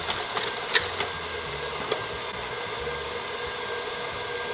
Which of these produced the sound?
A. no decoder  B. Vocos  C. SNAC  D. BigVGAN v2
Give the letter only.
A